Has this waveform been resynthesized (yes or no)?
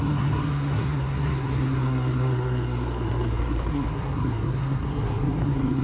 yes